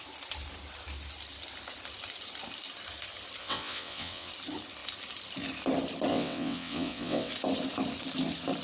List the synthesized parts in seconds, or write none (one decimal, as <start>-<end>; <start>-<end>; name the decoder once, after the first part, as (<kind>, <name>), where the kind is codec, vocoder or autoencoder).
3.4-4.3 (vocoder, WaveNeXt); 6.1-7.3